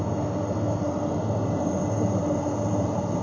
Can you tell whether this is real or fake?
real